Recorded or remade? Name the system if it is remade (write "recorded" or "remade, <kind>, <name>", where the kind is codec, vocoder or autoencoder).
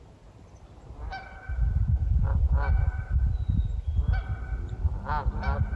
recorded